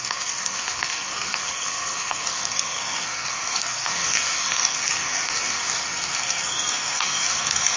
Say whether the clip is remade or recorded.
remade